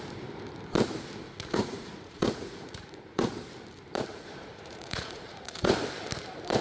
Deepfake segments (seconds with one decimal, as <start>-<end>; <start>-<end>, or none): 1.2-3.3; 4.1-5.7